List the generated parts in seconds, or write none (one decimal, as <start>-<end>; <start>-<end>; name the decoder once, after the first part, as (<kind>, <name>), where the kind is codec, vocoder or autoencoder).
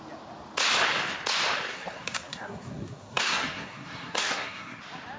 1.7-4.8 (codec, SNAC)